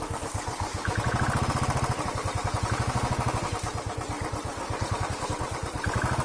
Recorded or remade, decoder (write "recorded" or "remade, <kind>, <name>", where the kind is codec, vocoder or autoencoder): remade, vocoder, BigVGAN v2